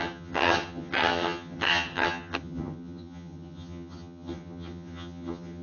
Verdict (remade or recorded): remade